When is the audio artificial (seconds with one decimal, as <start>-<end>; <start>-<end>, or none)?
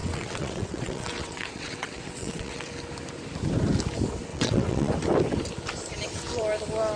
0.0-2.7; 4.3-4.9